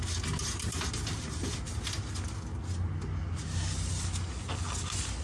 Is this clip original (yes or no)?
yes